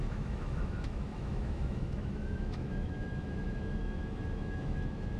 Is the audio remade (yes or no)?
yes